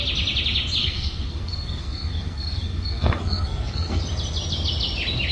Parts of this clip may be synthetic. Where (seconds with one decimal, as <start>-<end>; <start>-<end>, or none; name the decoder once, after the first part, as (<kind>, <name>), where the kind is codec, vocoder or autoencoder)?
0.8-4.0 (codec, SNAC)